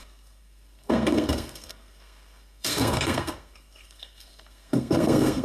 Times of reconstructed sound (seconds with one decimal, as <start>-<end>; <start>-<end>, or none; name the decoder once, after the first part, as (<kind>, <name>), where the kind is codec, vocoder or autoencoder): 0.0-5.4 (codec, SNAC)